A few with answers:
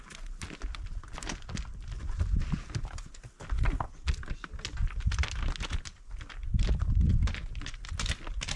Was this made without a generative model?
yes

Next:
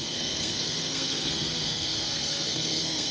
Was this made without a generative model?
no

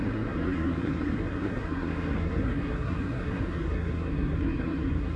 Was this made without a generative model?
no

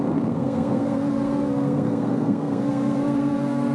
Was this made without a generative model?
no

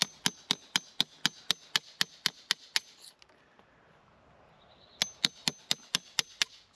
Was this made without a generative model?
yes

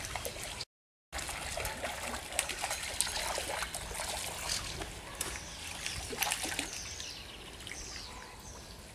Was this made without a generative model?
yes